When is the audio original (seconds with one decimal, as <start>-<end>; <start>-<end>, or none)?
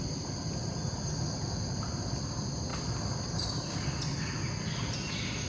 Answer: 0.0-5.5